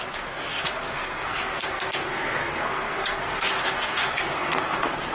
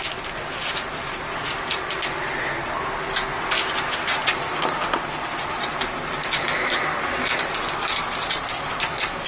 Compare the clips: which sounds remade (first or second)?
first